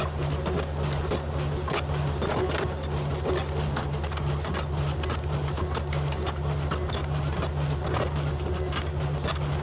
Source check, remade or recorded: recorded